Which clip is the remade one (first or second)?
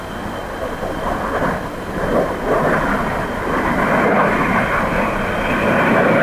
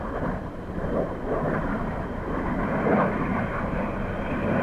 second